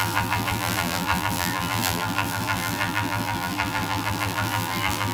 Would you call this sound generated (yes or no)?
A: yes